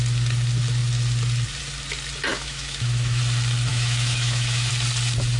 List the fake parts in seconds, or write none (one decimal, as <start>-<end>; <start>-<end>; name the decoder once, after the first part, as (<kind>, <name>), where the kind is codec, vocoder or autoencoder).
2.3-3.2 (autoencoder, DAC-VAE); 3.7-4.7